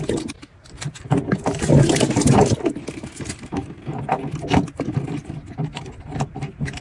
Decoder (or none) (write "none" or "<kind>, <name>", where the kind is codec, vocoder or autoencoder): none